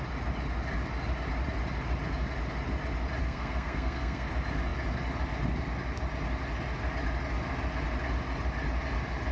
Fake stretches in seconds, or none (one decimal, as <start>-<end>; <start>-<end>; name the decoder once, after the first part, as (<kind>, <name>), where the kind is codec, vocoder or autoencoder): 3.2-4.3 (codec, SNAC)